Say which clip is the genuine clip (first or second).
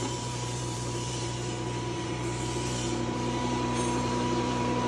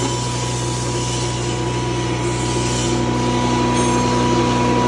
second